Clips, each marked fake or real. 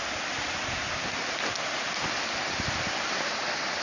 real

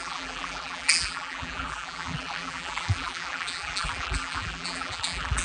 fake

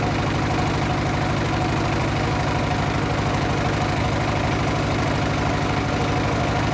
real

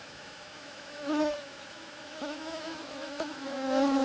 fake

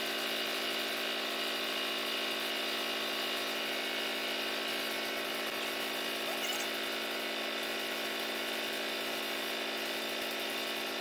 real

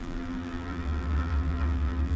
fake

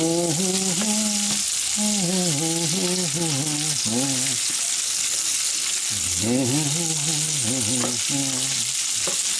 real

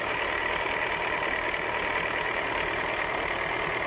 real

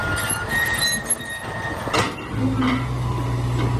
real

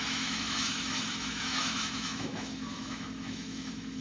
fake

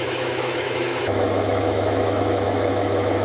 fake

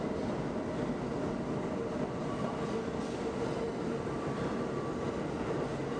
real